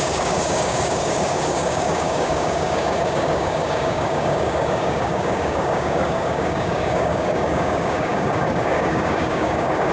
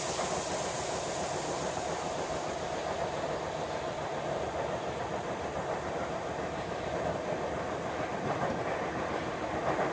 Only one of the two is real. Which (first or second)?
second